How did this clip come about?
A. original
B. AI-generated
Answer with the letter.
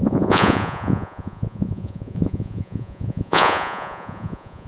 B